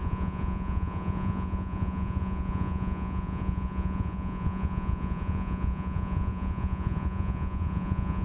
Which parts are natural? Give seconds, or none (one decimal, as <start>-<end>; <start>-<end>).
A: none